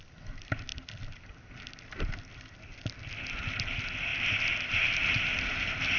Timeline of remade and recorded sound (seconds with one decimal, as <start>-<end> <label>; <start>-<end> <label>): 0.0-6.0 recorded